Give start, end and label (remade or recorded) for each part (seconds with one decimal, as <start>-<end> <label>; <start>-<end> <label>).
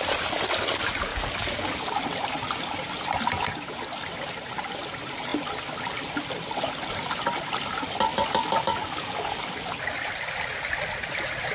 0.0-1.1 recorded; 1.1-2.0 remade; 2.0-8.4 recorded; 8.4-9.4 remade; 9.4-11.5 recorded